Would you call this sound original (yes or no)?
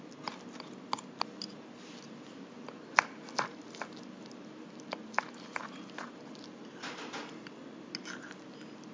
yes